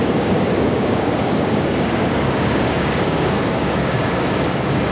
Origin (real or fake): fake